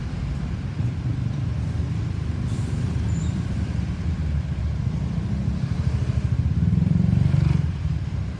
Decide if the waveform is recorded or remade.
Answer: remade